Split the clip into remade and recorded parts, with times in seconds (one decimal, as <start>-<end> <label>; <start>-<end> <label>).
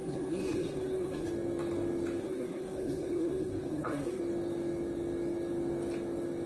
0.0-1.3 remade; 1.3-2.2 recorded; 2.2-4.2 remade; 4.2-6.5 recorded